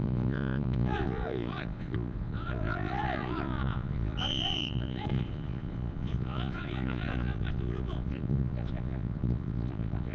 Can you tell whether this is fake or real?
fake